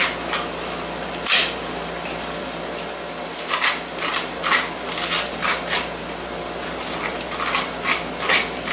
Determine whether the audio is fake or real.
real